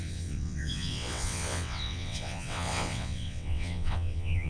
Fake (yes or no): yes